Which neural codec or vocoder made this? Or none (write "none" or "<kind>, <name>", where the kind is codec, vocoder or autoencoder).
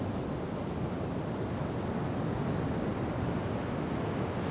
none